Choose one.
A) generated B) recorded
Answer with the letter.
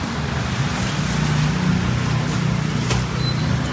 B